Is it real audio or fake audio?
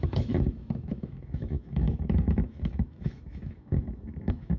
fake